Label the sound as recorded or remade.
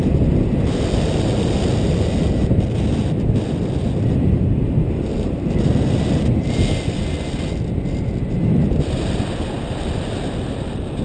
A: recorded